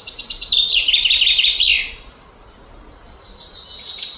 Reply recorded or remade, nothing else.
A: recorded